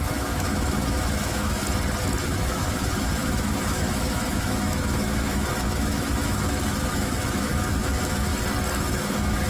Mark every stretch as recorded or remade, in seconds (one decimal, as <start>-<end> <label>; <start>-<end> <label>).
0.0-1.6 remade; 1.6-2.2 recorded; 2.2-8.3 remade; 8.3-8.8 recorded; 8.8-9.5 remade